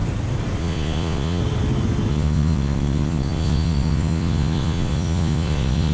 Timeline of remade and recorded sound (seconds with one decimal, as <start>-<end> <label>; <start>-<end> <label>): 0.0-0.6 recorded; 0.6-1.4 remade; 1.4-2.1 recorded; 2.1-5.9 remade